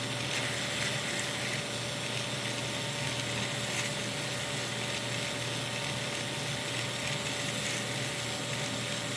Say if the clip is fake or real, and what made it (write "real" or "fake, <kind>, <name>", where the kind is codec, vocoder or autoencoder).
real